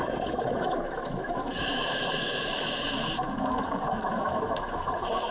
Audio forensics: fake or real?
fake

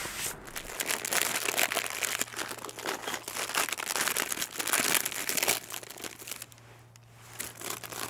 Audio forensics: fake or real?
real